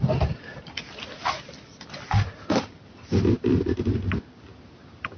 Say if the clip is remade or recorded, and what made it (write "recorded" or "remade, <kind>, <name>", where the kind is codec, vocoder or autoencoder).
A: recorded